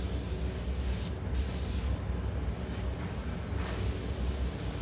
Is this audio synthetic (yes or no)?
no